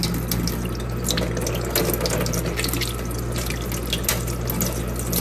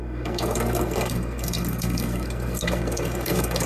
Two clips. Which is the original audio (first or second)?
first